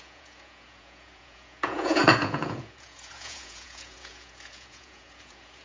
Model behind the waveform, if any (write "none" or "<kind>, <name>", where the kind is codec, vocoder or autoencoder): vocoder, Vocos